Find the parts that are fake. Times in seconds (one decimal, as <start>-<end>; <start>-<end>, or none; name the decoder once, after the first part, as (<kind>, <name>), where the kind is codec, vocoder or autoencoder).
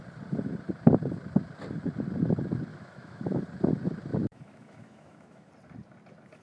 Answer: 2.7-3.4 (autoencoder, DAC-VAE); 4.1-5.5